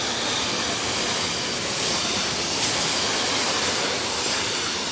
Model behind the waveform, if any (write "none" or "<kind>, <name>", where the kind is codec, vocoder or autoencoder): none